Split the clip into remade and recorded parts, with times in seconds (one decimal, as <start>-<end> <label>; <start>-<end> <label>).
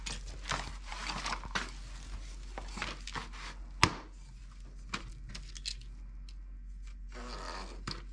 0.0-8.1 recorded